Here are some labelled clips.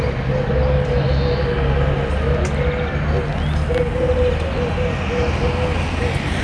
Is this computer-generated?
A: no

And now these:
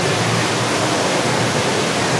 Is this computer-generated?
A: no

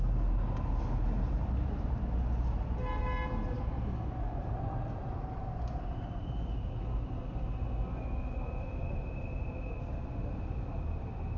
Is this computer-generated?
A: no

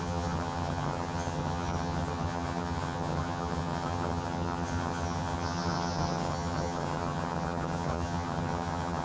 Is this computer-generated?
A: yes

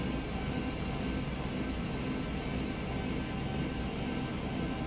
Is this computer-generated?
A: no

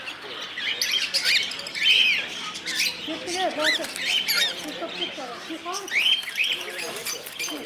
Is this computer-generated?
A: no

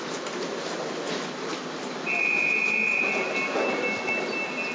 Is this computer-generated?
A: no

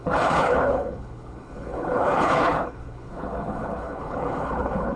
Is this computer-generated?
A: yes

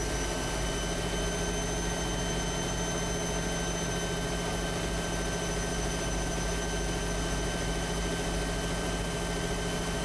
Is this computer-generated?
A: no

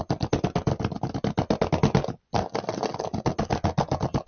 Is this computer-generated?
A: no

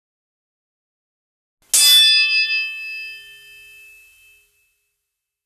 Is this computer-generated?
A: no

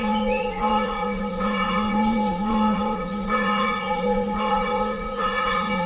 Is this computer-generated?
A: yes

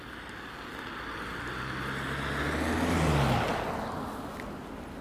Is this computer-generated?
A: no